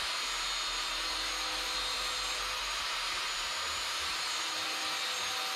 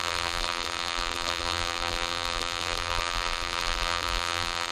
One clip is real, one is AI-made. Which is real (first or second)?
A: first